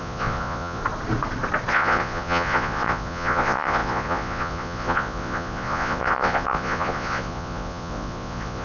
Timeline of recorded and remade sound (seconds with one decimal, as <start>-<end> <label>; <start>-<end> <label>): 0.0-0.8 remade; 0.8-1.7 recorded; 1.7-8.6 remade